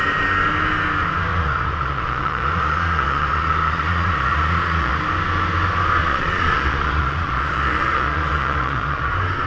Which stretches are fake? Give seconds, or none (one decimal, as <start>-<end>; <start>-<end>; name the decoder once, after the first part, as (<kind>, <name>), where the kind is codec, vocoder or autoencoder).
1.3-5.0 (vocoder, Vocos); 6.0-9.1